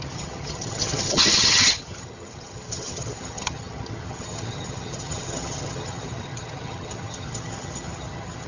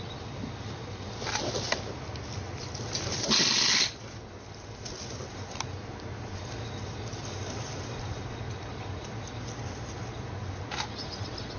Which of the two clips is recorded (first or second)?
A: second